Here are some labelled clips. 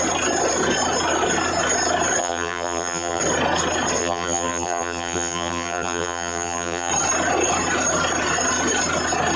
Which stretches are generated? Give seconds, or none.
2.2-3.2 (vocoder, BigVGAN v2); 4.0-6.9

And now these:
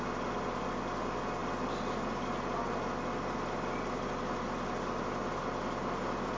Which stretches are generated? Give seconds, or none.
none

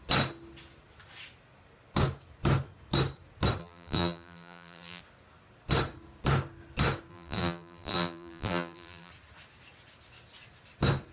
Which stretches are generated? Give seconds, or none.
3.6-5.0 (vocoder, BigVGAN v2); 7.1-9.1

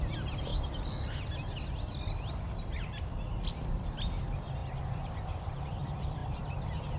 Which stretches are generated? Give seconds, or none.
0.0-0.5 (vocoder, BigVGAN v2); 3.6-4.6; 5.1-7.0

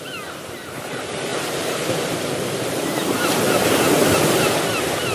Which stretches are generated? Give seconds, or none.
1.3-4.4 (vocoder, BigVGAN v2)

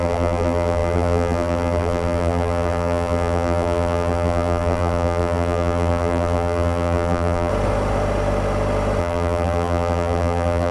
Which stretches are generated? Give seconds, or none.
0.0-7.5 (vocoder, BigVGAN v2); 9.0-10.7

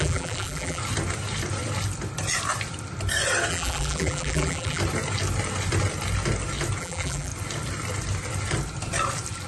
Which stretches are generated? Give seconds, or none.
0.0-0.8 (vocoder, BigVGAN v2); 3.5-4.8; 6.8-7.3